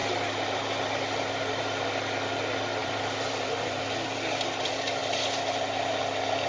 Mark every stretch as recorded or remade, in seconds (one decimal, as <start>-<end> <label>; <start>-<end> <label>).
0.0-2.8 recorded; 2.8-3.8 remade; 3.8-6.5 recorded